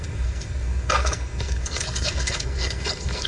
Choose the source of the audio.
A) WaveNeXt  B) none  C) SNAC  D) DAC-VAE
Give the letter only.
C